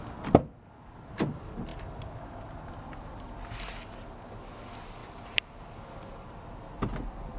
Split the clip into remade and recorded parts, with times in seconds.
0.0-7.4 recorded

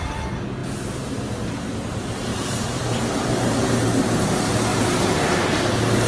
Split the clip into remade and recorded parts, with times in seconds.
0.0-2.3 recorded; 2.3-2.8 remade; 2.8-3.3 recorded; 3.3-3.8 remade; 3.8-4.7 recorded; 4.7-5.6 remade; 5.6-6.1 recorded